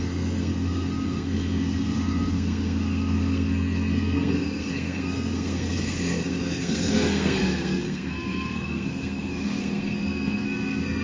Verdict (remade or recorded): remade